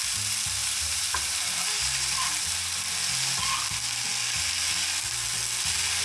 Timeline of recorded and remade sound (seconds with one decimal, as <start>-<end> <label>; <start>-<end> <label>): 0.0-0.6 recorded; 0.6-2.9 remade; 2.9-6.0 recorded